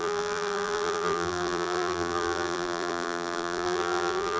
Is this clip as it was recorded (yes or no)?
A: no